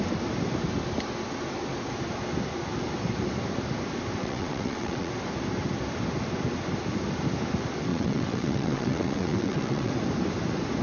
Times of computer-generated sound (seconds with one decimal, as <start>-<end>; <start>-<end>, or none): 4.2-5.1; 7.9-9.9

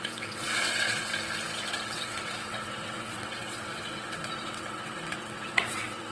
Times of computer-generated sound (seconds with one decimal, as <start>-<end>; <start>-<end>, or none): 0.0-1.1; 1.6-6.1

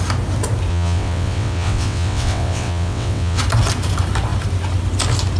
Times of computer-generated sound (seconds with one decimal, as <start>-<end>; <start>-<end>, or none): 0.7-3.4